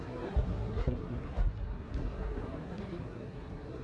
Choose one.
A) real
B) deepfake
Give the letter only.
B